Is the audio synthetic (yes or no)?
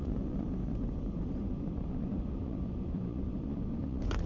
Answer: yes